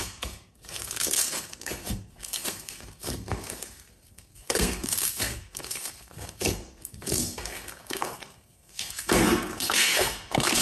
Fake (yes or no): yes